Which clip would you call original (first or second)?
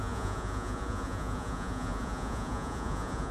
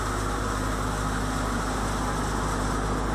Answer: second